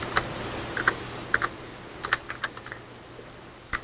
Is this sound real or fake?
real